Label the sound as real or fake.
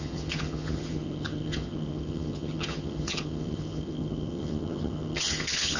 fake